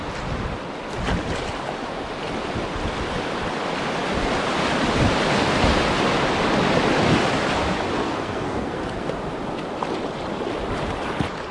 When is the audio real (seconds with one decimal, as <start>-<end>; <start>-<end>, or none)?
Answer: 0.0-8.0; 9.1-11.5